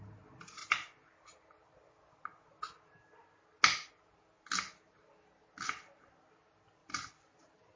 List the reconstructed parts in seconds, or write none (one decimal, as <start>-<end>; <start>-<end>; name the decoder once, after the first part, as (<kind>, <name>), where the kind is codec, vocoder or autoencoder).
6.8-7.8 (vocoder, BigVGAN v2)